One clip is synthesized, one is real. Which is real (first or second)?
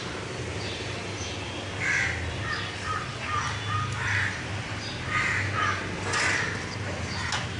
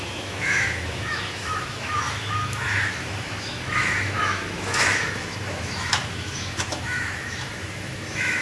first